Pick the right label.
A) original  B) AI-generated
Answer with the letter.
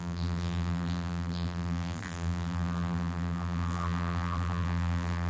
B